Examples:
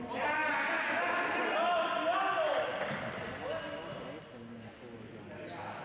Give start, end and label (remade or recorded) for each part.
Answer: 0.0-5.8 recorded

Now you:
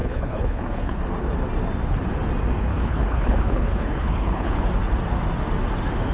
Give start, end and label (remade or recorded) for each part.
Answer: 0.0-1.0 remade; 1.0-2.7 recorded; 2.7-4.6 remade; 4.6-6.1 recorded